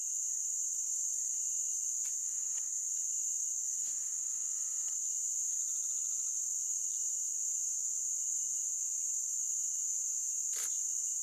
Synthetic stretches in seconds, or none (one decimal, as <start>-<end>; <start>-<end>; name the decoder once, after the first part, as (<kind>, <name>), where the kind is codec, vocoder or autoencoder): none